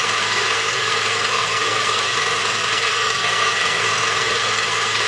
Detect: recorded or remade remade